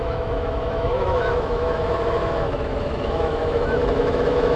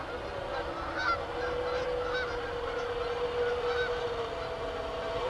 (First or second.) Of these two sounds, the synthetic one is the first